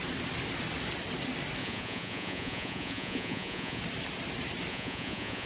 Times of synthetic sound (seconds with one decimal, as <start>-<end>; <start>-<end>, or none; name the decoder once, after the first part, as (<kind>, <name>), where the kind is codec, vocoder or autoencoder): 1.6-3.8 (vocoder, Vocos); 4.7-5.5